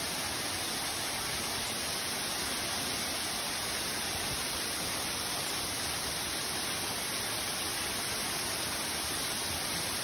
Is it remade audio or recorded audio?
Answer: recorded